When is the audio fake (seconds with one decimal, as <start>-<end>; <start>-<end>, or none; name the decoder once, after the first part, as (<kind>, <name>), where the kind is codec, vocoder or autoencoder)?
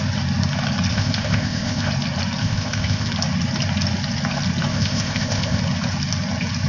0.9-1.9 (codec, ZipCodec); 2.4-3.1; 4.7-5.6